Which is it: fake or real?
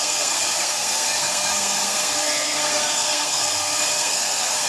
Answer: fake